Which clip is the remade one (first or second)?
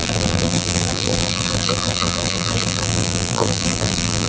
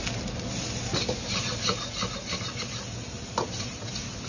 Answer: first